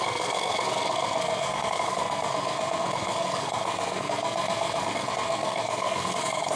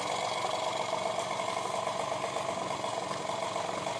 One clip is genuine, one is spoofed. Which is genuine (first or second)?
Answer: second